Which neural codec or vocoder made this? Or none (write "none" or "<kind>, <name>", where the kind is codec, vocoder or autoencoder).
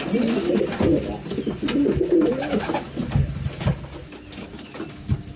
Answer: none